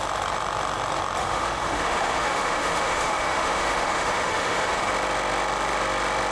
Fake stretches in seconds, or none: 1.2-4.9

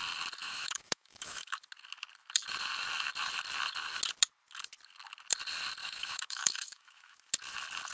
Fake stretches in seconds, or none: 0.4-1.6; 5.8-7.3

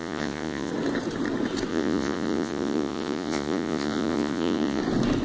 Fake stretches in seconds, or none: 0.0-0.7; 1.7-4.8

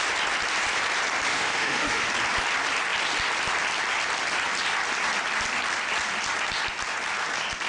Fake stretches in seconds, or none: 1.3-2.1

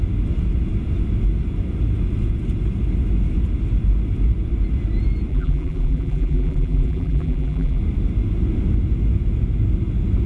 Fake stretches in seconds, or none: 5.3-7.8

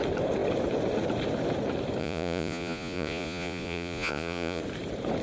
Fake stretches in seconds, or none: 2.0-4.6

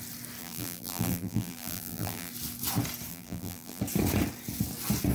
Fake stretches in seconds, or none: 0.4-2.3; 3.1-3.8

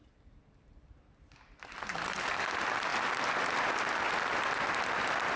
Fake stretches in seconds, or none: none